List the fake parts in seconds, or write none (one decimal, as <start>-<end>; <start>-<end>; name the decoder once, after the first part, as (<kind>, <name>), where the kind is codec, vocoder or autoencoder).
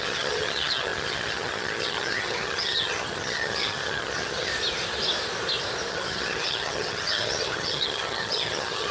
0.0-4.5 (vocoder, HiFi-GAN); 5.9-8.9